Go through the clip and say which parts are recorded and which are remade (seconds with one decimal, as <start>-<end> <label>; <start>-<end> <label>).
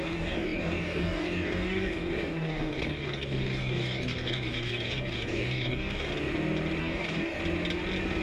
0.0-6.1 remade; 6.1-6.8 recorded; 6.8-7.4 remade; 7.4-8.2 recorded